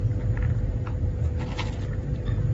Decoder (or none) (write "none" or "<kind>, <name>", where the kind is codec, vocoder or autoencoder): none